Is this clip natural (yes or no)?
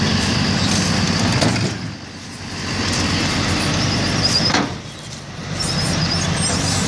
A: yes